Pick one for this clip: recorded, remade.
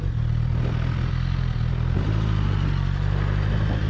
remade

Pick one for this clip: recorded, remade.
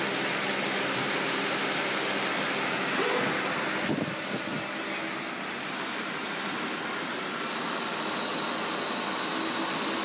recorded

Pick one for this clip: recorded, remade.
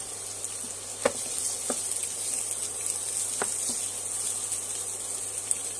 recorded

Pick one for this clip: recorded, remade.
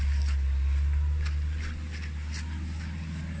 recorded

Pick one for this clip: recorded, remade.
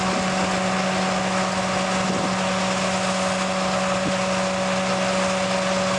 recorded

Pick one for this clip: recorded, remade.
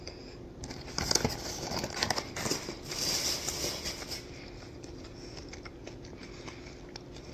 recorded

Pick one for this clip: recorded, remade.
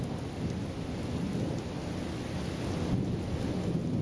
recorded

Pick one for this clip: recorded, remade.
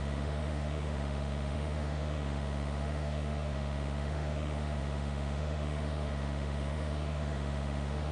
remade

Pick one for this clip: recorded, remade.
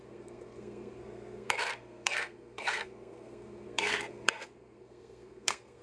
remade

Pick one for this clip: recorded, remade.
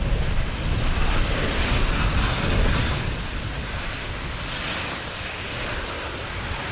recorded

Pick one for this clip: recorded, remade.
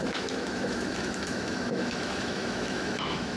remade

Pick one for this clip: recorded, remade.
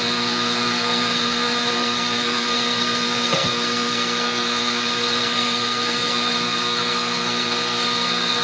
remade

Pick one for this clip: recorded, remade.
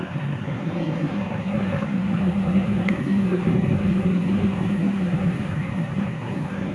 remade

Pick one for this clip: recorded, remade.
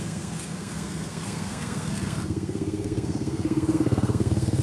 remade